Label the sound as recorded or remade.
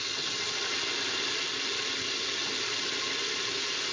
recorded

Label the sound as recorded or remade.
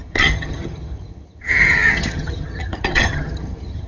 remade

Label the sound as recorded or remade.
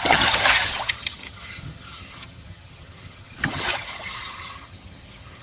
remade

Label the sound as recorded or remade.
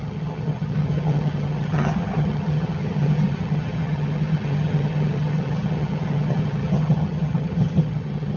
remade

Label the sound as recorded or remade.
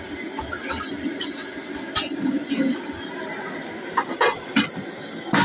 recorded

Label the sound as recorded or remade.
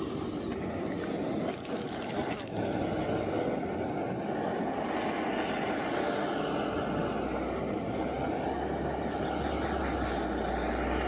recorded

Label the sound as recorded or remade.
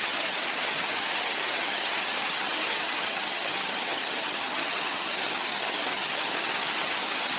remade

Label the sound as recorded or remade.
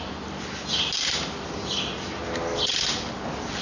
recorded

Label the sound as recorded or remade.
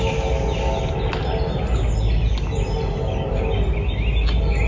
recorded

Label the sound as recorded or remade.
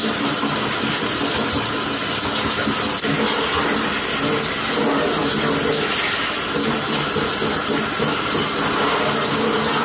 recorded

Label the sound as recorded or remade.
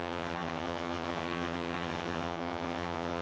remade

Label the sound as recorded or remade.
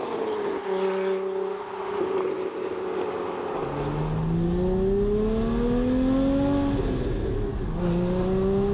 recorded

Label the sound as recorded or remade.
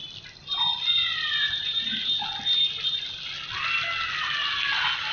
recorded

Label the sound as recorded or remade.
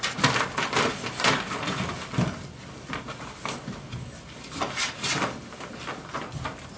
recorded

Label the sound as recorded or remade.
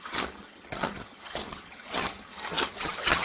remade